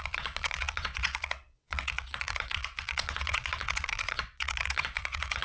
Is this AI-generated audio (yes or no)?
yes